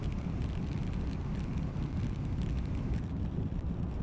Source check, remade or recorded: recorded